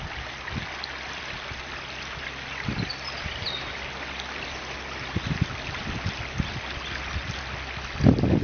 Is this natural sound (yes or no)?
yes